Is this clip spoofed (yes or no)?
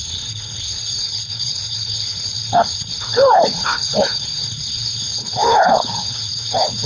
yes